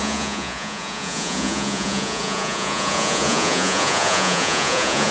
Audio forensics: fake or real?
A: fake